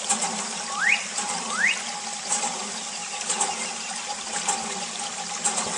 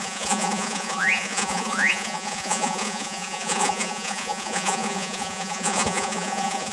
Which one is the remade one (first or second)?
second